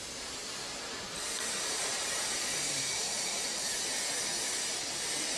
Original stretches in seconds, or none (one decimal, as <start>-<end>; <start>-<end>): 0.4-0.9